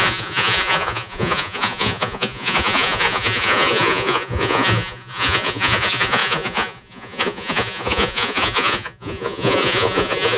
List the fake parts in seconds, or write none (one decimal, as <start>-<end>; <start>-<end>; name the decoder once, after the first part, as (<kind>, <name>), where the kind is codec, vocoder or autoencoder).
0.0-10.4 (vocoder, Vocos)